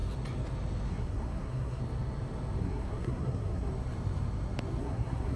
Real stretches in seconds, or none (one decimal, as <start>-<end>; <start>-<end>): 0.0-0.9; 1.8-2.6; 3.7-4.8